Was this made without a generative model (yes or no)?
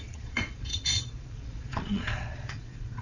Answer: no